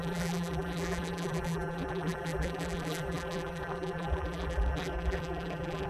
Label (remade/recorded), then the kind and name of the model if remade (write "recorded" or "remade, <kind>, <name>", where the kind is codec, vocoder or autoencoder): remade, vocoder, BigVGAN v2